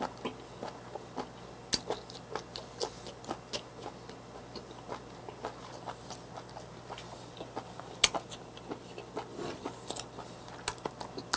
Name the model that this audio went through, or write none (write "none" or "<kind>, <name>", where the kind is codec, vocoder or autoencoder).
none